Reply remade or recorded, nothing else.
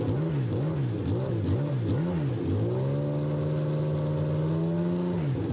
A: recorded